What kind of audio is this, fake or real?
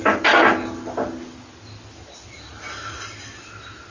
real